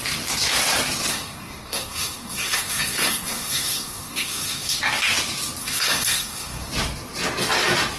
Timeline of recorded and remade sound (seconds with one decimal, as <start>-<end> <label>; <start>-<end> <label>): 0.0-1.1 recorded; 1.1-4.8 remade; 4.8-5.6 recorded; 5.6-6.7 remade; 6.7-8.0 recorded